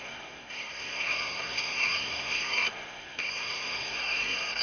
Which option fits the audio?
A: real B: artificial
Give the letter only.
B